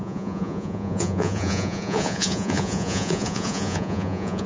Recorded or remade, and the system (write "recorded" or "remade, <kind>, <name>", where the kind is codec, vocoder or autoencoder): remade, vocoder, Vocos